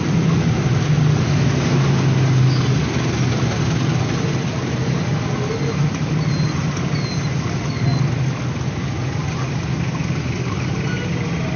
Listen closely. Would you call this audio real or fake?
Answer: real